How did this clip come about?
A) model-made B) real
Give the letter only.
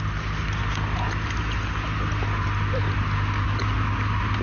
B